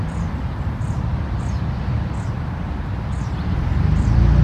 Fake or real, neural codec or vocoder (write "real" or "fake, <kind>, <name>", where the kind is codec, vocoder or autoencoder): fake, vocoder, BigVGAN v2